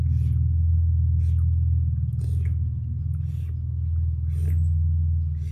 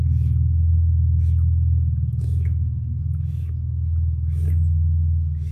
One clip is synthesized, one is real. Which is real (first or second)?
first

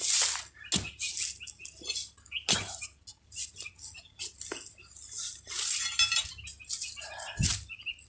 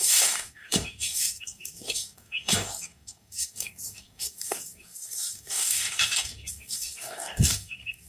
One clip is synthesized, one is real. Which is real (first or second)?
first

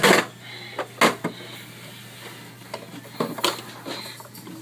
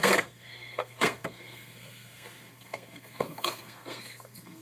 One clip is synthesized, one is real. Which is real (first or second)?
first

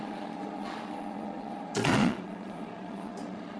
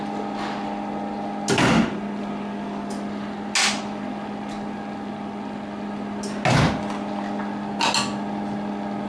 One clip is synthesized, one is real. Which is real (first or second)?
second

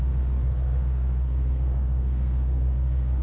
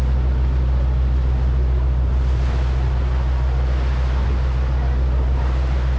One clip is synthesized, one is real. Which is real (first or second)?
second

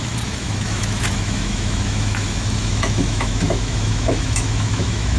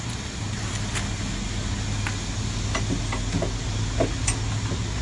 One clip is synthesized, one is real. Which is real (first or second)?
second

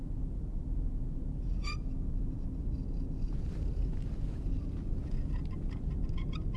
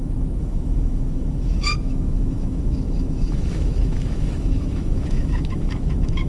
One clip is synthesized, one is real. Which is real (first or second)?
first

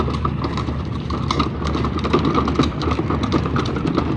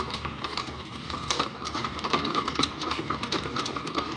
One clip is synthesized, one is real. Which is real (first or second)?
first